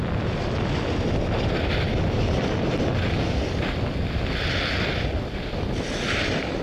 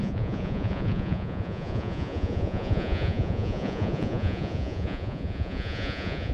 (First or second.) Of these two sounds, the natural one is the first